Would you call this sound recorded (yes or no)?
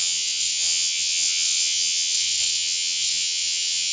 no